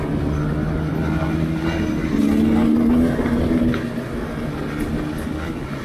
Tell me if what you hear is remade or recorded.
recorded